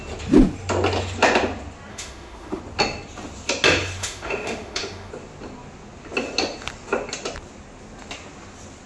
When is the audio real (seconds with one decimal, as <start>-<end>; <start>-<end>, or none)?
0.0-1.9; 2.6-4.0; 5.1-8.9